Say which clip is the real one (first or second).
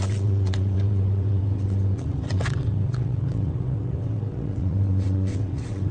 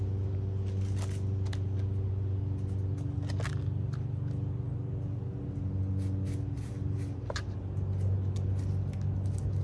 second